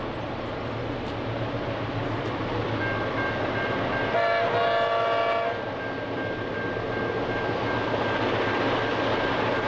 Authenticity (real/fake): real